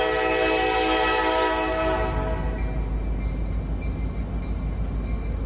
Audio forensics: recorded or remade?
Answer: recorded